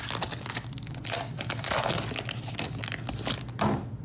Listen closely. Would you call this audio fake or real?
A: real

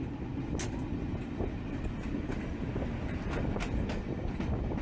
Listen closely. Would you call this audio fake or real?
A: real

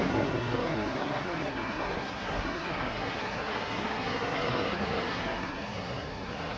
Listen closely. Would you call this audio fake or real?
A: fake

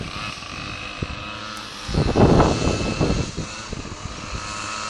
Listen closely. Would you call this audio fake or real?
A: real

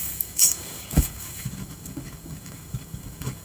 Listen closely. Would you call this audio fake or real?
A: fake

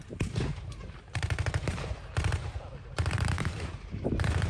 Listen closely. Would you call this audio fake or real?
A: fake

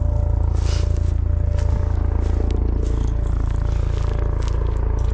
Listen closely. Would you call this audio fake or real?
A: real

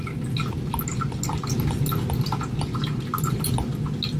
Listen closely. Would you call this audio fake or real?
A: real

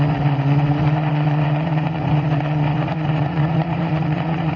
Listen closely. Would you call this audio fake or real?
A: fake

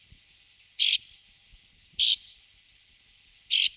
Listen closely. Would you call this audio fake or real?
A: fake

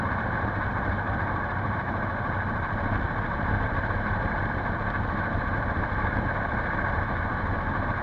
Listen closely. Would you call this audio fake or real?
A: fake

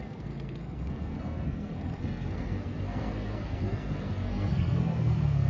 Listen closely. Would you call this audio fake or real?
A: fake